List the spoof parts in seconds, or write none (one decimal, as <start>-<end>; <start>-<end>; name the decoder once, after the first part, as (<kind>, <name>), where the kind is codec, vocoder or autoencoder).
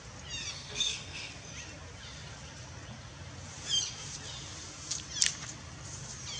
0.5-1.3 (codec, SNAC)